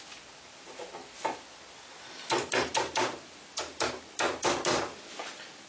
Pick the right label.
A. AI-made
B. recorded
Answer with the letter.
B